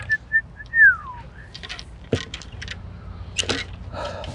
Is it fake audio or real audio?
real